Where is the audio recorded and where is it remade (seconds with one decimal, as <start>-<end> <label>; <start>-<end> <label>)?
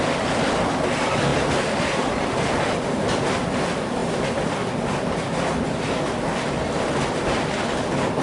0.0-1.3 recorded; 1.3-2.2 remade; 2.2-8.2 recorded